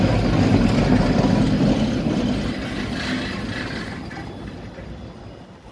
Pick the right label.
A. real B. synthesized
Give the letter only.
A